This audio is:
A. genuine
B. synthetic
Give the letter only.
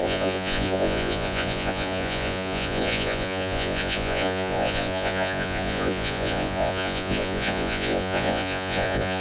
B